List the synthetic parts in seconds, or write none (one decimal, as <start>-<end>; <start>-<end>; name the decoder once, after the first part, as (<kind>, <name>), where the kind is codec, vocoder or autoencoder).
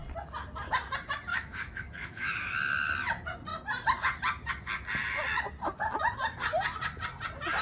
1.3-2.9 (autoencoder, DAC-VAE)